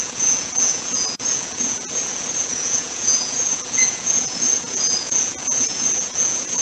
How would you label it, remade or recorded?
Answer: remade